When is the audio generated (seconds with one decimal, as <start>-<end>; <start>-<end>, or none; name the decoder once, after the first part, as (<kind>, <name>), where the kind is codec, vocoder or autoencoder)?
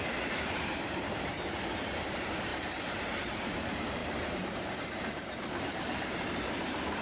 0.0-7.0 (vocoder, BigVGAN v2)